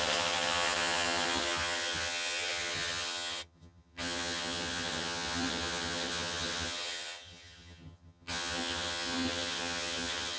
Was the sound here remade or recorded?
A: remade